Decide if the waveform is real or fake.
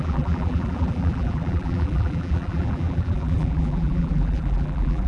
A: fake